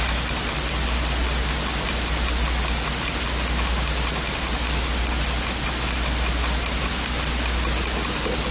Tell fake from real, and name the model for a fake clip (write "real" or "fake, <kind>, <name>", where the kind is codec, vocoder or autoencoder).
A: real